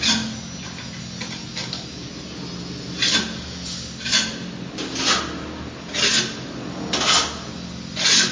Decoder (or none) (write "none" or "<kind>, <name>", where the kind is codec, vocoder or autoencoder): none